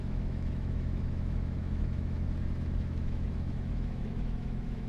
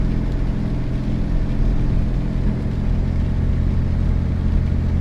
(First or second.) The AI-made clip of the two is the first